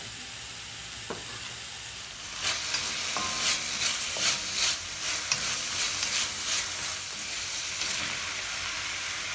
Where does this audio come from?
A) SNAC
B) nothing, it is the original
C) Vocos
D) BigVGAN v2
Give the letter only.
B